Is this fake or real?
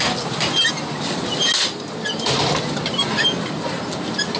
real